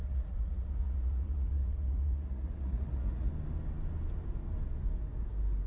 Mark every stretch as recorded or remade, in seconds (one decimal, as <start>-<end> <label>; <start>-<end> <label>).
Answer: 0.0-3.3 remade; 3.3-5.7 recorded